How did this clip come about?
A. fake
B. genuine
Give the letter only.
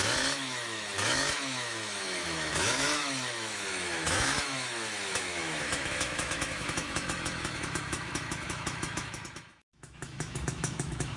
A